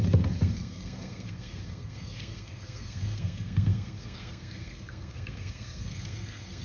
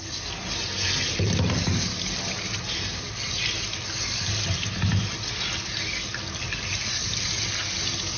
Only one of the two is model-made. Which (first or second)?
first